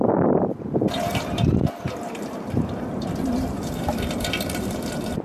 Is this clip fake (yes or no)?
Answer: yes